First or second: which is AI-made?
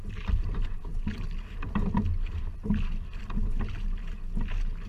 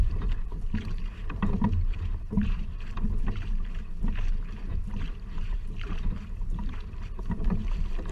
second